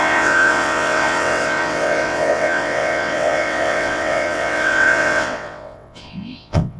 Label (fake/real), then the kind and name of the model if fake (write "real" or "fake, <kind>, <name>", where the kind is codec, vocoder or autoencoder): fake, vocoder, WaveNeXt